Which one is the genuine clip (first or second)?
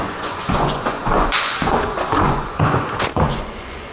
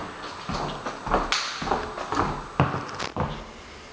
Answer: second